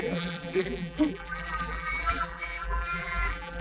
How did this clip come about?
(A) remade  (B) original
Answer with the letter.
A